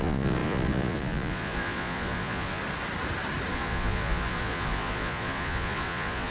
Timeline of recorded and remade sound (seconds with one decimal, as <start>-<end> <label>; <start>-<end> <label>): 0.0-2.6 remade; 2.6-3.5 recorded; 3.5-6.3 remade